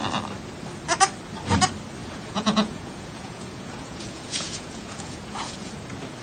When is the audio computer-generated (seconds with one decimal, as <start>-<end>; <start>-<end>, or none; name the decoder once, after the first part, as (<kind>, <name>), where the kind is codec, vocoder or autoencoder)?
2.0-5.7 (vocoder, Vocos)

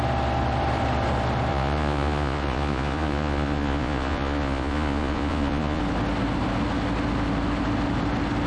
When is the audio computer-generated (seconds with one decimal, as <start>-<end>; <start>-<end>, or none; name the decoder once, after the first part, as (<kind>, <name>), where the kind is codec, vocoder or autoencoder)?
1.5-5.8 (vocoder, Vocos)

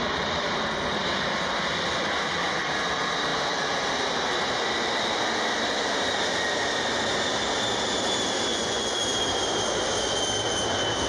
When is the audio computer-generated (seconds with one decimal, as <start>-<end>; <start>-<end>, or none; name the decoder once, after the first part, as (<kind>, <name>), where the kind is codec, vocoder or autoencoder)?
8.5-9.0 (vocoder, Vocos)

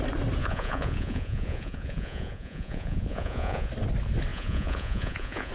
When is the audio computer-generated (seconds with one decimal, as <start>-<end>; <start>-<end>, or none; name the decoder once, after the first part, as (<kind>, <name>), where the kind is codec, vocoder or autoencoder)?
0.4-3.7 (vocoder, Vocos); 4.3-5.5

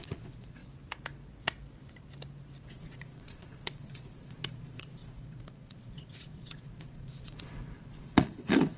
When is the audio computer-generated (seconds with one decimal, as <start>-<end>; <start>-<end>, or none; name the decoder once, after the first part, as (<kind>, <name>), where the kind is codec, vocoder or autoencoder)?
0.0-0.6 (vocoder, Vocos); 2.7-8.8